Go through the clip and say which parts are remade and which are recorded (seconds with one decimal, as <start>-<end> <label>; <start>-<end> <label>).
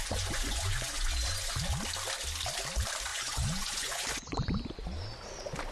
0.0-1.6 remade; 1.6-3.1 recorded; 3.1-4.5 remade; 4.5-5.7 recorded